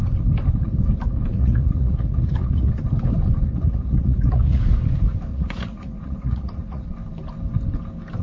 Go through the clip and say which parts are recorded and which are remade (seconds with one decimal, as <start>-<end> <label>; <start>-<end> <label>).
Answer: 0.0-1.3 recorded; 1.3-2.7 remade; 2.7-3.5 recorded; 3.5-4.6 remade; 4.6-5.3 recorded; 5.3-6.9 remade; 6.9-8.2 recorded